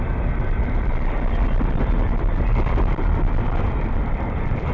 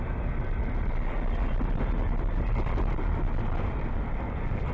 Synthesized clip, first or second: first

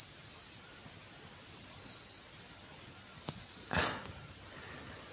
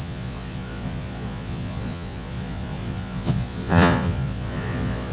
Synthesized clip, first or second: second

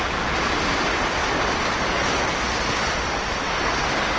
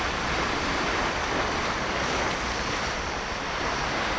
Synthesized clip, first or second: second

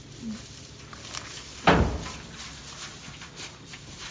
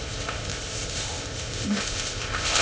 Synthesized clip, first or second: second